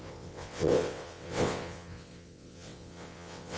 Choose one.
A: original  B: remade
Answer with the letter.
B